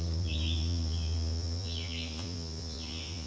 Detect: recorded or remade remade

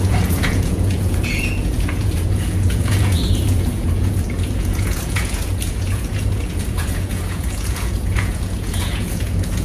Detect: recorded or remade remade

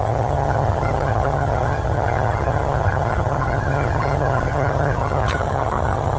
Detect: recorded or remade remade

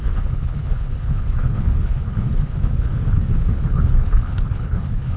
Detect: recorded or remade remade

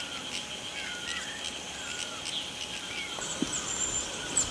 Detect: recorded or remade recorded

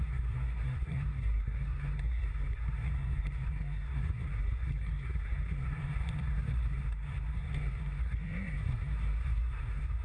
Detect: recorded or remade remade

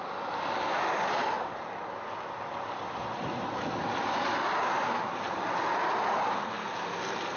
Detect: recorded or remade recorded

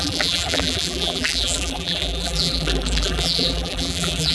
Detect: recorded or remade remade